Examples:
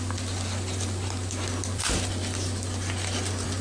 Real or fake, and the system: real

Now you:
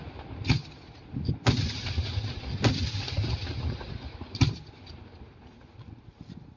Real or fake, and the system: real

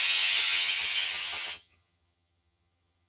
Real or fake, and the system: fake, vocoder, HiFi-GAN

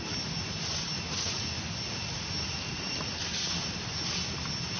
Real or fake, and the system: real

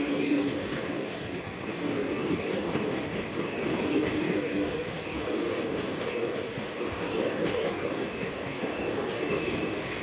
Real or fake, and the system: fake, codec, DAC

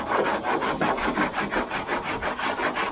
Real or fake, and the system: real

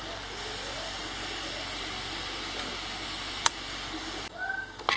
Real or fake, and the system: fake, vocoder, BigVGAN v2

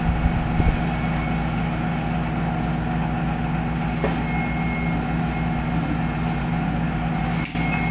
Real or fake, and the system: real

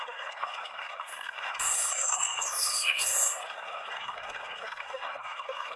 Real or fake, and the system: fake, codec, SNAC